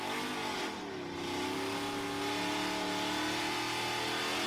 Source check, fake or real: real